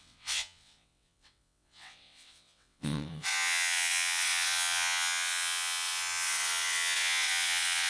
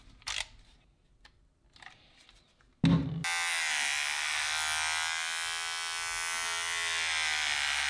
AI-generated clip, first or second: first